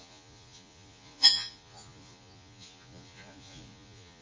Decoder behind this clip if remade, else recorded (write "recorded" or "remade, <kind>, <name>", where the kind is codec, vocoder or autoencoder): remade, vocoder, Vocos